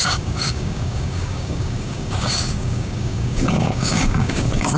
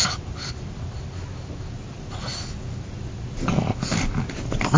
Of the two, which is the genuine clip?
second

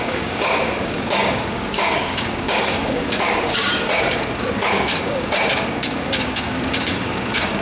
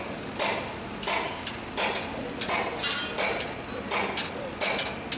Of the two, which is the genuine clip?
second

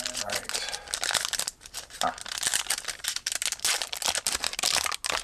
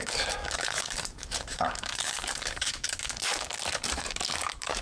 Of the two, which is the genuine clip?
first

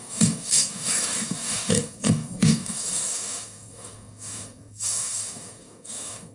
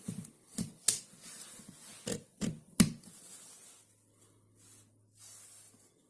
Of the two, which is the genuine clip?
second